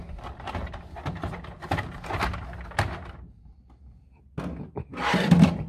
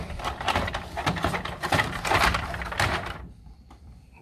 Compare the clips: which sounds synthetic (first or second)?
second